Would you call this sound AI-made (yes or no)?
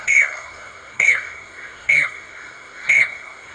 yes